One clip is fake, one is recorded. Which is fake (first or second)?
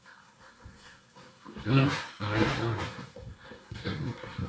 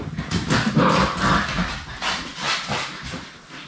first